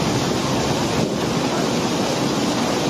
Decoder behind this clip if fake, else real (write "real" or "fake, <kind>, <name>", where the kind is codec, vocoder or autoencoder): real